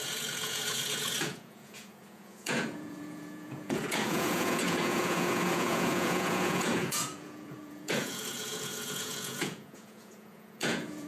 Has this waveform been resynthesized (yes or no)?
yes